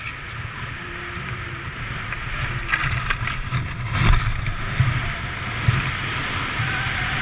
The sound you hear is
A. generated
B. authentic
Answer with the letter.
B